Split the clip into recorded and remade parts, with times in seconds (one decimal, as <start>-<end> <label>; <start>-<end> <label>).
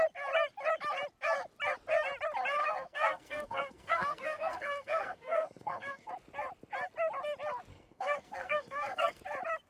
0.0-2.6 recorded; 2.6-6.1 remade; 6.1-7.7 recorded; 7.7-9.2 remade; 9.2-9.7 recorded